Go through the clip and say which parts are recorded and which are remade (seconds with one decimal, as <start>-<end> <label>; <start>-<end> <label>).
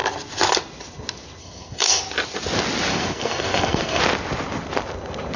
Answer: 0.0-1.4 recorded; 1.4-2.0 remade; 2.0-2.9 recorded; 2.9-4.0 remade; 4.0-5.4 recorded